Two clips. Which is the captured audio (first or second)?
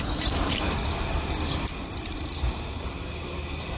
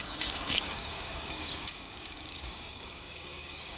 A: first